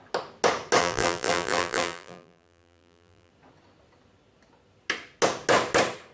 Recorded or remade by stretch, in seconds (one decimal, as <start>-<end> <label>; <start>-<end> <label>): 0.0-0.8 recorded; 0.8-3.3 remade; 3.3-6.1 recorded